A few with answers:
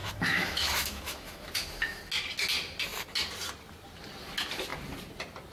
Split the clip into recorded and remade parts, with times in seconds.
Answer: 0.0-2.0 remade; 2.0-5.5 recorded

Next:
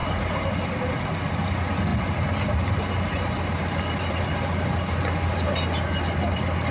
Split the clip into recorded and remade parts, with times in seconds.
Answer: 0.0-6.7 recorded